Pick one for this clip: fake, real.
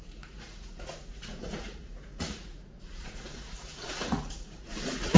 fake